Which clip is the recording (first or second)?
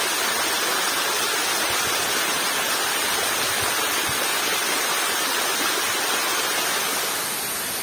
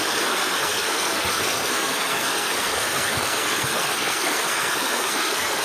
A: first